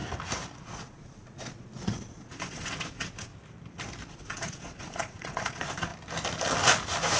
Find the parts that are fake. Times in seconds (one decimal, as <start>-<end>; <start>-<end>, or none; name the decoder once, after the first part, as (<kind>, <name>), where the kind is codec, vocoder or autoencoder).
0.6-3.3 (vocoder, Vocos); 4.1-5.9